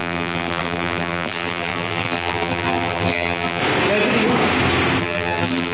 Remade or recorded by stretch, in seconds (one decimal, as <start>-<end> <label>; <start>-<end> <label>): 0.0-3.6 remade; 3.6-5.0 recorded; 5.0-5.7 remade